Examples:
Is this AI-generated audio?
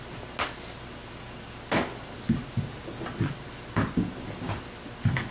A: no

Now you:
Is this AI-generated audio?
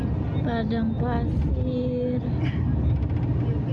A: no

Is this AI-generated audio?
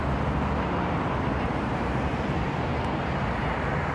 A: no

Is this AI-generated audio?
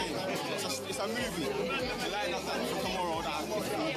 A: no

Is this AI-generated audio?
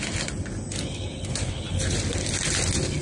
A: no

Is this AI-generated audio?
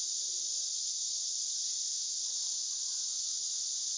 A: no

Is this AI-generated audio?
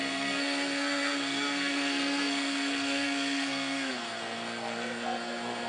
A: yes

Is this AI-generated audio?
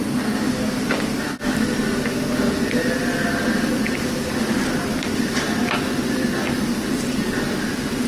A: no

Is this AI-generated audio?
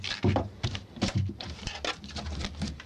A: yes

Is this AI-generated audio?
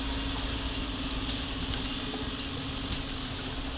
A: no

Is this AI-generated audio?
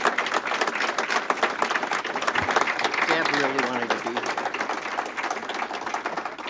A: no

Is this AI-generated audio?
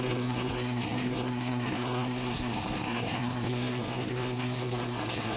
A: yes